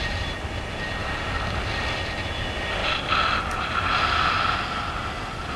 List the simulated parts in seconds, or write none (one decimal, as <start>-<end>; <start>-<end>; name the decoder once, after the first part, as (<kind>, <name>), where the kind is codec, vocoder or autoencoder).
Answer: none